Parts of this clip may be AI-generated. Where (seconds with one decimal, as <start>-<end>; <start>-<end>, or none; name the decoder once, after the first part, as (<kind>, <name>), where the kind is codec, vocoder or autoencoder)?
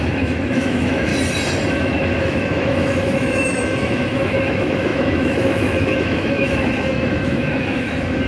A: 0.0-1.1 (autoencoder, DAC-VAE); 1.7-8.3